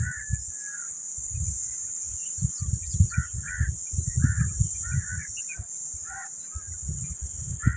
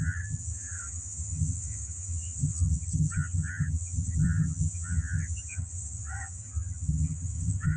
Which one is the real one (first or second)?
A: first